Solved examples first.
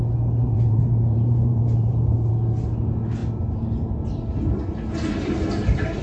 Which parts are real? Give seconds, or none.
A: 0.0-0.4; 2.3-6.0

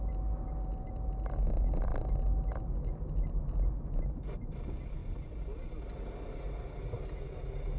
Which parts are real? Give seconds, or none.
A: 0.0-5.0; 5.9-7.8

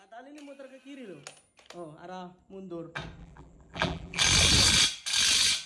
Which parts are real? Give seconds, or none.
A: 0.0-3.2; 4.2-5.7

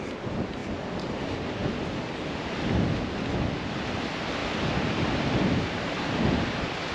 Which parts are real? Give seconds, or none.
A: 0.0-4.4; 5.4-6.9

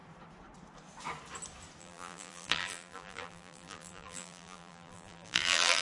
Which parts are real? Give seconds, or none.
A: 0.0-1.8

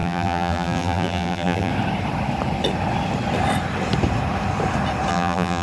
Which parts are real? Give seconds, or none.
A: 1.7-5.1

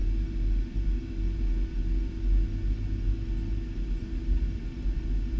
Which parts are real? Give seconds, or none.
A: 0.0-5.4